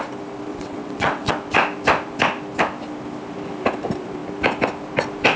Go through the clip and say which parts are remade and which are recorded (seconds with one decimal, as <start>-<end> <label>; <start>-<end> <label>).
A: 0.0-0.5 recorded; 0.5-1.3 remade; 1.3-5.4 recorded